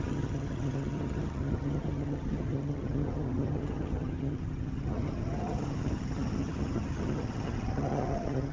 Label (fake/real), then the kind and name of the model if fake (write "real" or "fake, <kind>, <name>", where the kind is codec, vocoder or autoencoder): fake, vocoder, HiFi-GAN